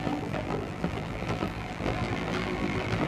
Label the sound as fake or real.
fake